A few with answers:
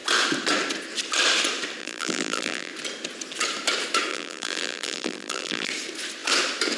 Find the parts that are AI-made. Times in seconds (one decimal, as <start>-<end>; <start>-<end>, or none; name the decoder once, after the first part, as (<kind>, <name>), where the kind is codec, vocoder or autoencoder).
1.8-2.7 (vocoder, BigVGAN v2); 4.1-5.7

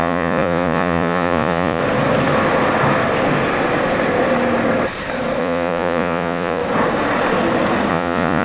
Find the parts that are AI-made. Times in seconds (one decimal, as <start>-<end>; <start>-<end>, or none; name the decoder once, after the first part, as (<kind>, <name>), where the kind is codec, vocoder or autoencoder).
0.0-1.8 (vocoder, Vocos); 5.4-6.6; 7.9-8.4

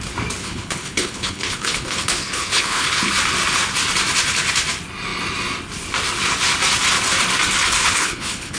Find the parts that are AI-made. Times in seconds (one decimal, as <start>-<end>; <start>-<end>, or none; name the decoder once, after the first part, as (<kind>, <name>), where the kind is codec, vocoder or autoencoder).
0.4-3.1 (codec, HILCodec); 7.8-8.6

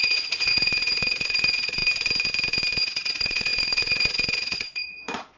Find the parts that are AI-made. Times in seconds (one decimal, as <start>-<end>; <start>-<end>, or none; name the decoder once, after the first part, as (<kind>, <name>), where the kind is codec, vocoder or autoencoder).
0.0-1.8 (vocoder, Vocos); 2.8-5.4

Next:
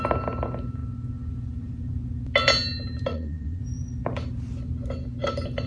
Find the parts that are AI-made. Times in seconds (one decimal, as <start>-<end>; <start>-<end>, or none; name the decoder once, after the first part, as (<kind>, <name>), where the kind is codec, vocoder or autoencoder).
3.1-3.6 (vocoder, Vocos)

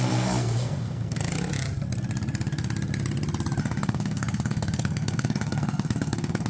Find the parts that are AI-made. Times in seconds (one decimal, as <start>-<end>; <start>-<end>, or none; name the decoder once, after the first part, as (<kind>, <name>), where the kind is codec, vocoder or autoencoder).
0.0-1.3 (codec, SNAC); 3.6-6.5

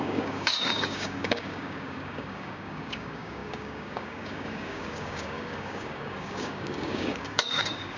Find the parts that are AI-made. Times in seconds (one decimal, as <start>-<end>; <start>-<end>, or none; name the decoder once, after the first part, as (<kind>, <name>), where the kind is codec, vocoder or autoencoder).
0.0-8.0 (codec, DAC)

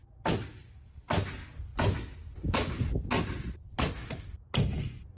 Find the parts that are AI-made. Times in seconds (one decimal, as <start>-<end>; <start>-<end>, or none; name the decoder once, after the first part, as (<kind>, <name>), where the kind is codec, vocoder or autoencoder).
none